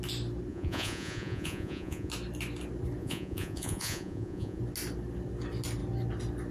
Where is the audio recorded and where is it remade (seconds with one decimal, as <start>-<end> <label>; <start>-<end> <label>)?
0.0-0.5 recorded; 0.5-2.1 remade; 2.1-3.0 recorded; 3.0-4.6 remade; 4.6-6.5 recorded